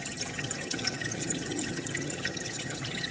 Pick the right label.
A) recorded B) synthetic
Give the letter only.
B